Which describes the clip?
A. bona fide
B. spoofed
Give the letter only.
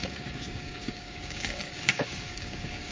B